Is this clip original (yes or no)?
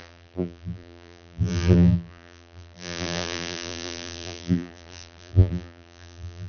no